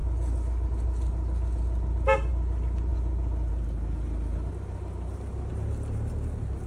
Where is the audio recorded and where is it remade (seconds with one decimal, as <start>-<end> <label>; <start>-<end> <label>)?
0.0-5.5 recorded; 5.5-6.1 remade; 6.1-6.7 recorded